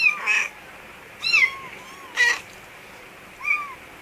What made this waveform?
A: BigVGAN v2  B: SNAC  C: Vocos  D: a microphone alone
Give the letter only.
D